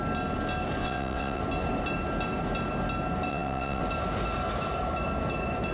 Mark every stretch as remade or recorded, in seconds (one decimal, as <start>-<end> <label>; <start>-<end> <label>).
0.0-0.8 recorded; 0.8-1.4 remade; 1.4-3.3 recorded; 3.3-3.8 remade; 3.8-5.7 recorded

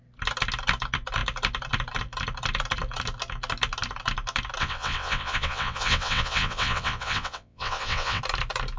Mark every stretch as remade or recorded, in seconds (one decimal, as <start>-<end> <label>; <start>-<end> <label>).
0.0-4.6 recorded; 4.6-8.2 remade; 8.2-8.8 recorded